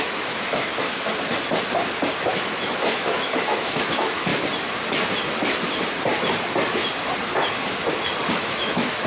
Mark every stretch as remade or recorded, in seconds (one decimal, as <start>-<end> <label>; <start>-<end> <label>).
0.0-0.7 remade; 0.7-2.3 recorded; 2.3-4.3 remade; 4.3-8.3 recorded; 8.3-9.1 remade

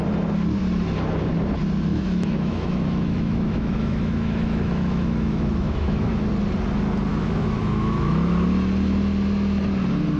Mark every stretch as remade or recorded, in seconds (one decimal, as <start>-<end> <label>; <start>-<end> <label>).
0.0-1.9 recorded; 1.9-6.3 remade; 6.3-7.1 recorded; 7.1-8.3 remade; 8.3-10.2 recorded

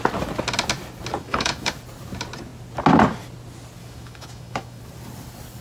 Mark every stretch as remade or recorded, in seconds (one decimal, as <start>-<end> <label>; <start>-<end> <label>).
0.0-1.2 recorded; 1.2-1.7 remade; 1.7-3.8 recorded; 3.8-4.8 remade; 4.8-5.6 recorded

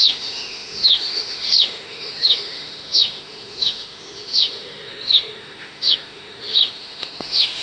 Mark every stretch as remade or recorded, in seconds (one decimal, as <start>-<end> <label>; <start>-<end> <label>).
0.0-7.6 remade

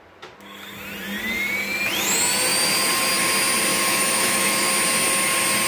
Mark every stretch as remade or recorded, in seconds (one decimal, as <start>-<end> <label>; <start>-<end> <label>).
0.0-3.7 recorded; 3.7-4.7 remade; 4.7-5.7 recorded

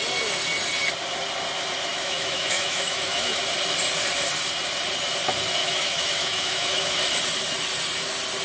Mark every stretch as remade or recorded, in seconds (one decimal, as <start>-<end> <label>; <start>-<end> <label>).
0.0-1.9 recorded; 1.9-3.4 remade; 3.4-5.6 recorded; 5.6-7.0 remade; 7.0-8.4 recorded

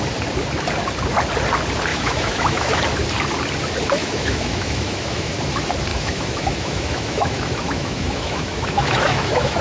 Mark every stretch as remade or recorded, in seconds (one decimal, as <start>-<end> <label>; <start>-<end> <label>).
0.0-1.9 recorded; 1.9-2.8 remade; 2.8-4.0 recorded; 4.0-5.3 remade; 5.3-5.9 recorded; 5.9-9.6 remade

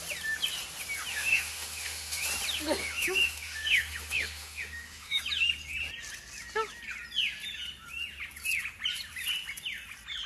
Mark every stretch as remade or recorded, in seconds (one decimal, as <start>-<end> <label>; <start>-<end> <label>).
0.0-1.1 recorded; 1.1-2.3 remade; 2.3-2.8 recorded; 2.8-5.2 remade; 5.2-10.3 recorded